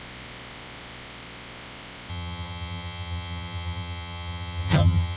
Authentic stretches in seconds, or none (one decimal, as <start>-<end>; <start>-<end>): 0.0-2.1